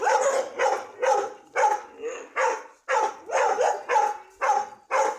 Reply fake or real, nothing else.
real